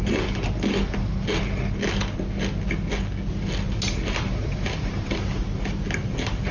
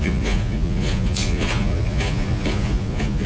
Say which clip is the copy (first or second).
second